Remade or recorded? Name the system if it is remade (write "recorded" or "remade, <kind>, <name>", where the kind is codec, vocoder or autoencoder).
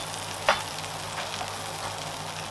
recorded